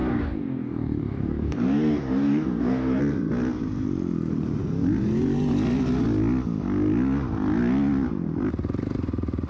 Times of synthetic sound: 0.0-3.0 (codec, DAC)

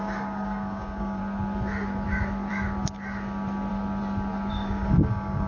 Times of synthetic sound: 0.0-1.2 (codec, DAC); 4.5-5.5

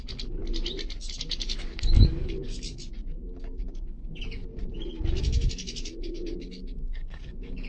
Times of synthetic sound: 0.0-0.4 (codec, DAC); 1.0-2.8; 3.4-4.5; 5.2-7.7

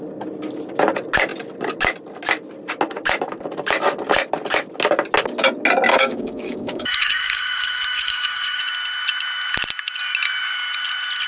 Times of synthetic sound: 5.9-8.6 (codec, DAC)

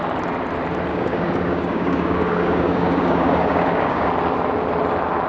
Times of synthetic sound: 0.9-4.1 (codec, DAC)